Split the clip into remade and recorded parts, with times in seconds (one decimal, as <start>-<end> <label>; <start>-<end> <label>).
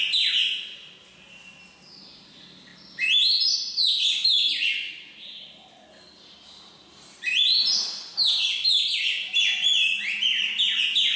0.0-11.2 recorded